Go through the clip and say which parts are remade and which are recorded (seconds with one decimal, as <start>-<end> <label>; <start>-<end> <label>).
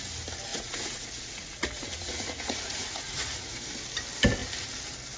0.0-0.5 recorded; 0.5-3.6 remade; 3.6-5.2 recorded